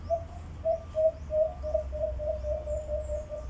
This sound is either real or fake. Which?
real